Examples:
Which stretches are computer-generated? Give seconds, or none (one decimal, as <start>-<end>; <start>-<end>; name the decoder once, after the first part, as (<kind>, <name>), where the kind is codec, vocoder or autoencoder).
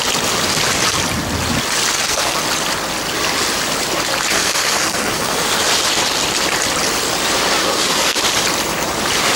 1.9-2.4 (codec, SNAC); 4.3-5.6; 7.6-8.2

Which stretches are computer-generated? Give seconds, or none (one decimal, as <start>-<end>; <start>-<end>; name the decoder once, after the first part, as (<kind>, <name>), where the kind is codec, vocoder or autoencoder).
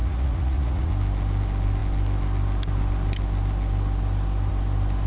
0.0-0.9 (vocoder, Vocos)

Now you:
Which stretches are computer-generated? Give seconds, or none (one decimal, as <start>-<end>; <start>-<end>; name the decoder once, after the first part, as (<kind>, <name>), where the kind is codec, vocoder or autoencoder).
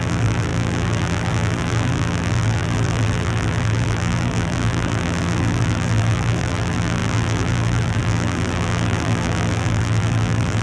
0.0-10.6 (vocoder, BigVGAN v2)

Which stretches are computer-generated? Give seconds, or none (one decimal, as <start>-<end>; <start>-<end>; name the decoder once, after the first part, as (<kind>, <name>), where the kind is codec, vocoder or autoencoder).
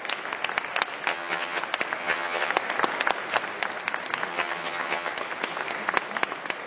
1.1-1.6 (vocoder, HiFi-GAN); 2.0-2.5; 4.3-5.1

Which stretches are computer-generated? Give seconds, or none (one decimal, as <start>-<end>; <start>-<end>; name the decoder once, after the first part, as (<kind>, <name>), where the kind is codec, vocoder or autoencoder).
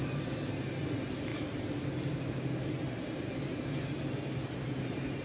none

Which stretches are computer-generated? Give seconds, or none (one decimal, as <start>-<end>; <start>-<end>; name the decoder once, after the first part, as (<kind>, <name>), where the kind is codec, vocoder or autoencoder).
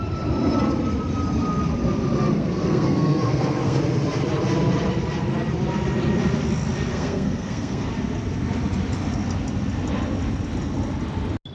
2.3-3.8 (codec, SNAC); 6.9-7.9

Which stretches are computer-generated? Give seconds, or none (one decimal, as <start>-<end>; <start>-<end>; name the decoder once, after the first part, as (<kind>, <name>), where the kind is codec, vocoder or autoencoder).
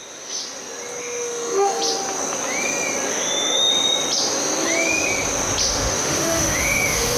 0.0-0.4 (autoencoder, DAC-VAE); 1.0-1.8; 3.1-3.7; 5.6-7.2